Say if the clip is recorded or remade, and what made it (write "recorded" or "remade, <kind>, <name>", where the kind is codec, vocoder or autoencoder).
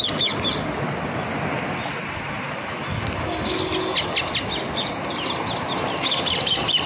recorded